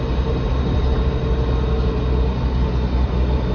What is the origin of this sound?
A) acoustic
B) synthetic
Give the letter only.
A